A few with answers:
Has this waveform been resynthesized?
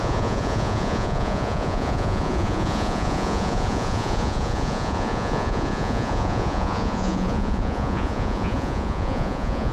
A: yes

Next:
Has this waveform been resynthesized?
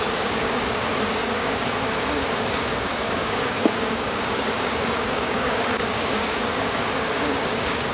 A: yes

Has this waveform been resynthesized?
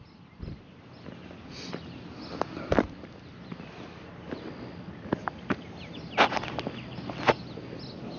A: no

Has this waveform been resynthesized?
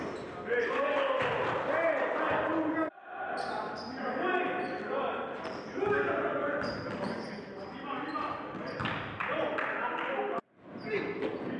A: no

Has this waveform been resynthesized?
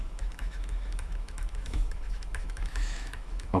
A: yes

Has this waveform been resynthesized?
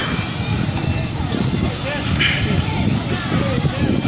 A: no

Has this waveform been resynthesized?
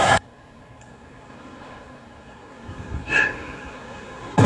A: yes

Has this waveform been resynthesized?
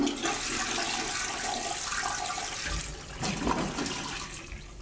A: no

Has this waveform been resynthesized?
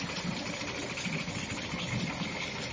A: no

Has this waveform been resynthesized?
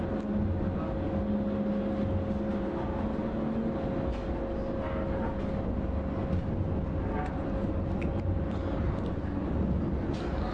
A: no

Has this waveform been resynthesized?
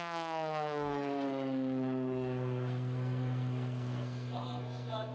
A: yes